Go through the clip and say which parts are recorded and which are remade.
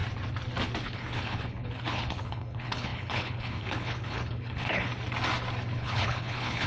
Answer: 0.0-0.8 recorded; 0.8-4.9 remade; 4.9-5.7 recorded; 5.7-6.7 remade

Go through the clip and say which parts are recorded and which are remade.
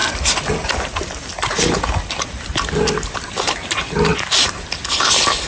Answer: 0.0-5.5 recorded